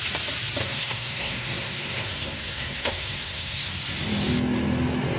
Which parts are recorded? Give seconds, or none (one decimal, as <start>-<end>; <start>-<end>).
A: 0.0-0.6; 3.7-5.2

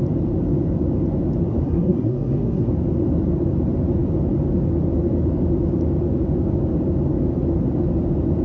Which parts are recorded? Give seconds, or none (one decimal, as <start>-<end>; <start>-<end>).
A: 0.0-1.5; 2.7-8.4